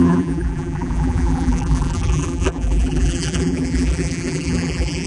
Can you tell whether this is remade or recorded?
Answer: remade